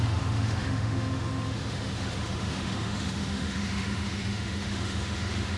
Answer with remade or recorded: remade